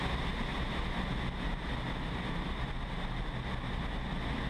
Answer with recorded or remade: recorded